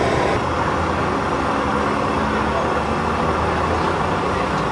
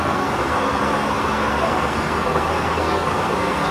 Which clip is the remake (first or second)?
second